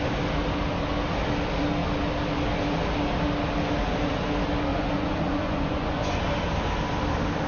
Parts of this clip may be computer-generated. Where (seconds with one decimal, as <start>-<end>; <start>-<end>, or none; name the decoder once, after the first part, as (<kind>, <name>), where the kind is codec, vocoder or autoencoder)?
4.7-6.2 (vocoder, Vocos)